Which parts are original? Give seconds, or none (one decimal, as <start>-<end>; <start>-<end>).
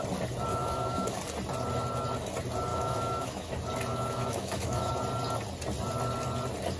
0.0-0.5; 1.2-2.7; 3.5-3.9; 4.9-6.8